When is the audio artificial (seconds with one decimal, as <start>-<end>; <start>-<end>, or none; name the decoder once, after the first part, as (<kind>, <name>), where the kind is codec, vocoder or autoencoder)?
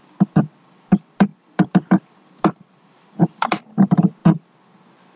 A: 1.3-3.6 (vocoder, BigVGAN v2)